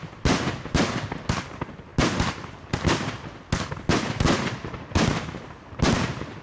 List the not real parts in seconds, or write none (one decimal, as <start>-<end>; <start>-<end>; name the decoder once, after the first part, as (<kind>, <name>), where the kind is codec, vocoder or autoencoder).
none